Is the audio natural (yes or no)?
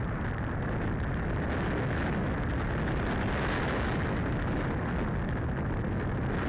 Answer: yes